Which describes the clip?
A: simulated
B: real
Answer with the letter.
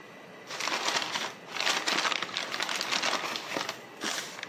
B